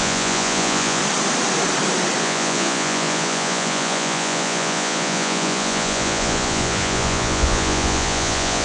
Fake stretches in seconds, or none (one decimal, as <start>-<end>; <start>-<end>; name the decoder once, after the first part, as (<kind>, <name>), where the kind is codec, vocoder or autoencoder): 0.0-1.0 (vocoder, Vocos); 2.2-8.6